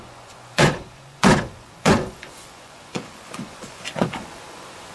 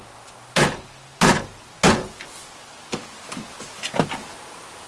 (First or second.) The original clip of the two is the second